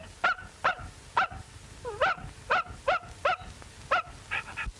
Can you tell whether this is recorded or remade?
recorded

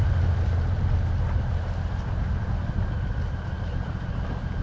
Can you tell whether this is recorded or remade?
recorded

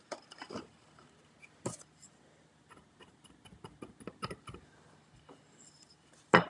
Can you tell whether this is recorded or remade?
recorded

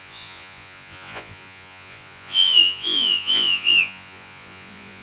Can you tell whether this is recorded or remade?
remade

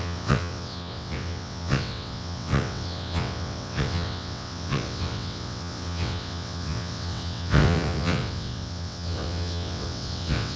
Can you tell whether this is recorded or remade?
remade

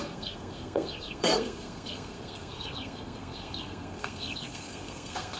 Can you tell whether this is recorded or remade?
remade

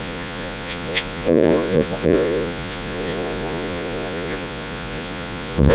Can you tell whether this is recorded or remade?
remade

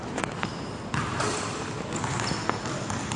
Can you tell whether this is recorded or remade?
recorded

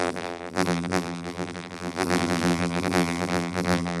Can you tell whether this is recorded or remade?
remade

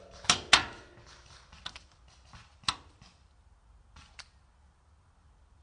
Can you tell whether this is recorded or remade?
recorded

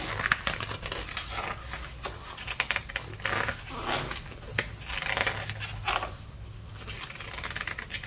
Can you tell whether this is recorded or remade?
recorded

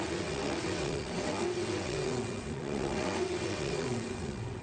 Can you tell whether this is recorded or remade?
remade